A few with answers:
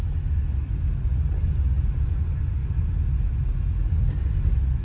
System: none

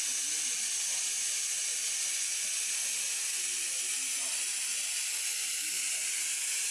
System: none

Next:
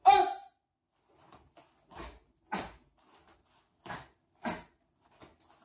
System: none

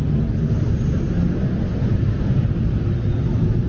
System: vocoder, BigVGAN v2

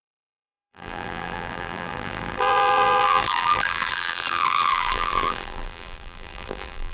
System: vocoder, BigVGAN v2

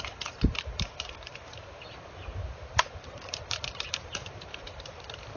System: vocoder, BigVGAN v2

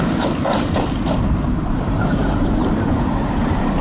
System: vocoder, BigVGAN v2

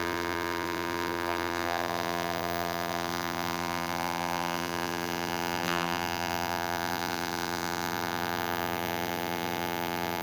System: vocoder, BigVGAN v2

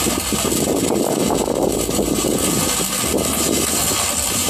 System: none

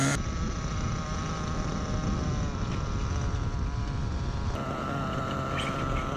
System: none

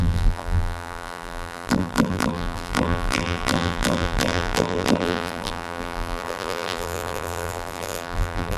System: vocoder, BigVGAN v2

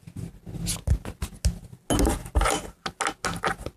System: none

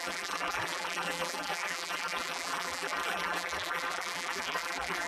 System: vocoder, BigVGAN v2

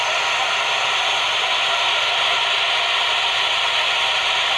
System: none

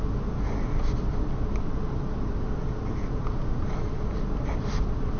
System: none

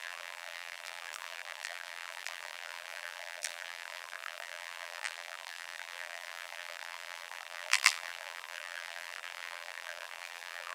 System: vocoder, BigVGAN v2